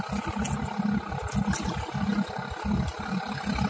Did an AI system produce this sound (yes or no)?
no